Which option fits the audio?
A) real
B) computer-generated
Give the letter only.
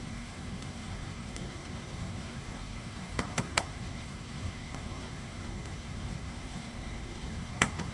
B